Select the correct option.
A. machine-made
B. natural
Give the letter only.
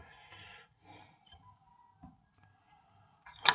B